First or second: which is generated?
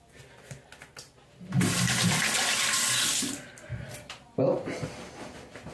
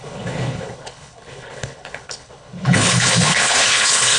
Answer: second